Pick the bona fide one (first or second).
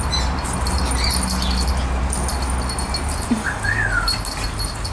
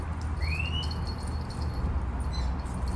first